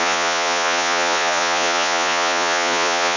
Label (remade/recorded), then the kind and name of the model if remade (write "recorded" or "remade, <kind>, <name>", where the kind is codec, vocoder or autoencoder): remade, vocoder, Vocos